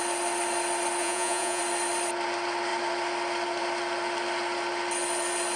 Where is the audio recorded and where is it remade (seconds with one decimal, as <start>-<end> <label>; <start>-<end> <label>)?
0.0-1.0 recorded; 1.0-1.6 remade; 1.6-5.6 recorded